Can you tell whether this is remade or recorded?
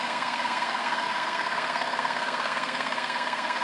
remade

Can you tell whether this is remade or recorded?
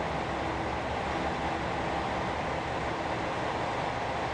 recorded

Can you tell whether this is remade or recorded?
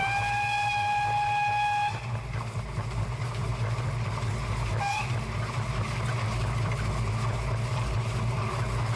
recorded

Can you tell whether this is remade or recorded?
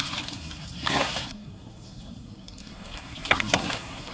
remade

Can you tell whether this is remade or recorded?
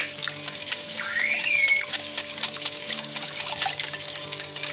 remade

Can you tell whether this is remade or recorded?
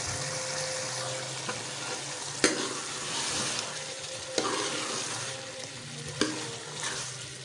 recorded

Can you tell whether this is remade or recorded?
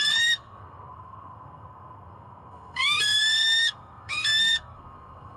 remade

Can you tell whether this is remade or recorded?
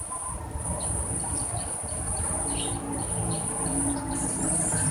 remade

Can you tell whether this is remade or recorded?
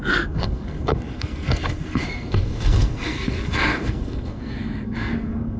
remade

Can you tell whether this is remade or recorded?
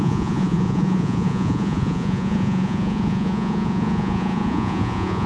remade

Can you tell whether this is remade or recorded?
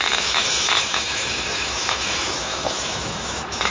remade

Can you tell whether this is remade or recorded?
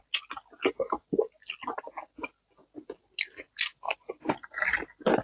recorded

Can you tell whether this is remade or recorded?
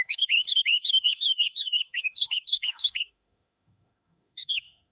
remade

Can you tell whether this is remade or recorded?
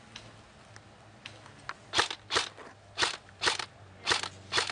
recorded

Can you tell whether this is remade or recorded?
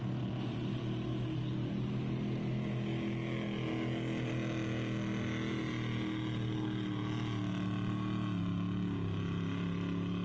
recorded